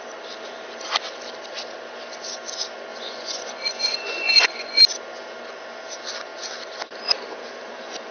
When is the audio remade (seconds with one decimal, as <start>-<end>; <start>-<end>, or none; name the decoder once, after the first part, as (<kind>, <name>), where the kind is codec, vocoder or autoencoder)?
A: 2.9-4.8 (vocoder, Vocos)